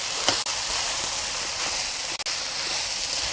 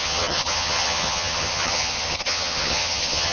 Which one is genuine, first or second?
first